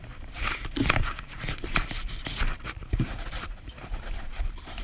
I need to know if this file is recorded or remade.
remade